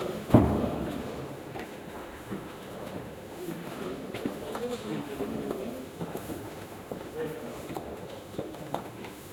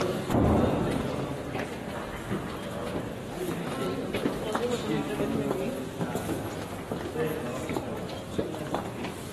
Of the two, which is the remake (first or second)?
first